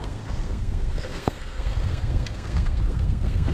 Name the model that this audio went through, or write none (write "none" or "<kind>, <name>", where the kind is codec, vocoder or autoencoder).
codec, SNAC